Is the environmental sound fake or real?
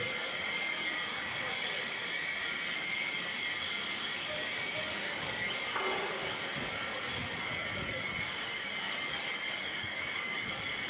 fake